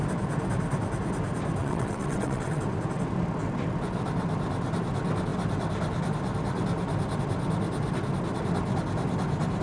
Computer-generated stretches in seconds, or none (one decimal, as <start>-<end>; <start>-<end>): 1.6-2.6